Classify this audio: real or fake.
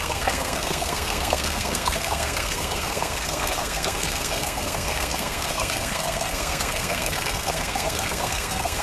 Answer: fake